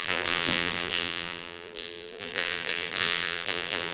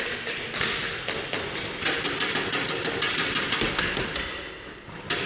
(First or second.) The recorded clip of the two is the second